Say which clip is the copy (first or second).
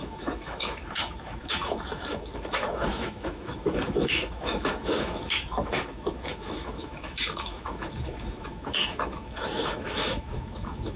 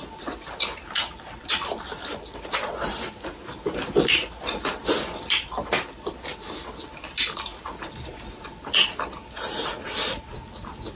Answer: first